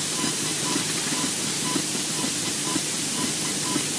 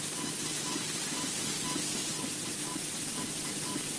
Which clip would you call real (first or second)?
second